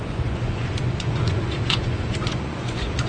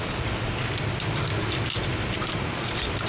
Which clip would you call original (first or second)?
second